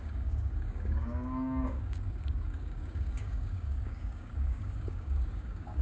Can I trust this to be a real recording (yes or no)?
no